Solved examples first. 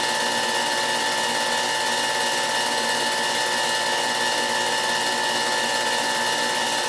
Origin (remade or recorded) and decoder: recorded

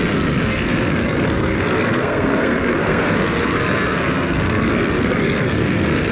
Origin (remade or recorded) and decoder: remade, codec, SNAC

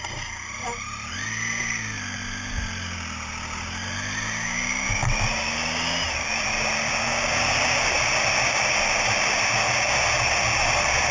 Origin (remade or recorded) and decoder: recorded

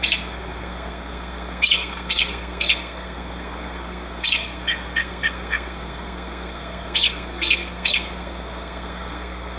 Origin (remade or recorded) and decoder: remade, codec, SNAC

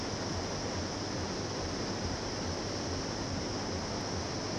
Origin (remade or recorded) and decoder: recorded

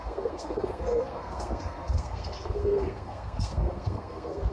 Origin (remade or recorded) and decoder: remade, codec, SNAC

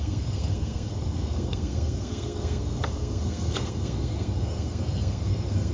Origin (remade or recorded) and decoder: remade, codec, SNAC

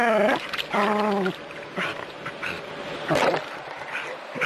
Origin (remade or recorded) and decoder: recorded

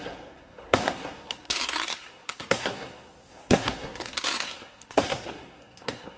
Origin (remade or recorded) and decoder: remade, codec, SNAC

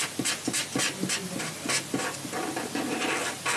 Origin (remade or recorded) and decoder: recorded